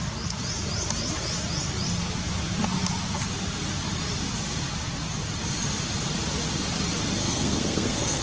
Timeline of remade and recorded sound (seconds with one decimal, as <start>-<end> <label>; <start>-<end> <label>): 0.0-7.2 recorded; 7.2-8.2 remade